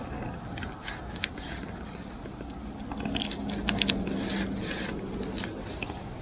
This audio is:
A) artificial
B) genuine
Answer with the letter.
B